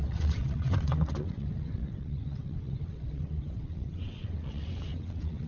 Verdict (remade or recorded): remade